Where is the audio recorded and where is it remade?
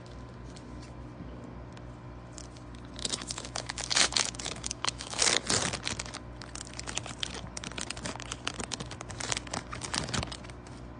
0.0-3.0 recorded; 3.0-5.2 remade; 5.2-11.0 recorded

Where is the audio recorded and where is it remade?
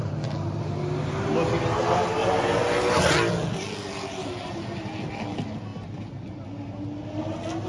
0.0-7.7 recorded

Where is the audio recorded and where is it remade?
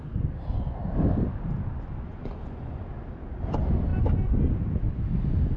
0.0-2.1 recorded; 2.1-2.8 remade; 2.8-5.6 recorded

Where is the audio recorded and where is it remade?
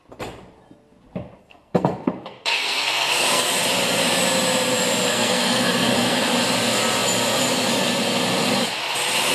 0.0-1.4 recorded; 1.4-3.5 remade; 3.5-5.1 recorded; 5.1-6.3 remade; 6.3-9.3 recorded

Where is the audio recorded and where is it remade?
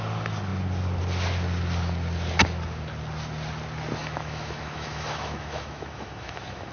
0.0-4.0 recorded; 4.0-6.7 remade